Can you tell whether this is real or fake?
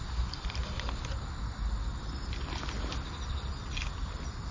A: real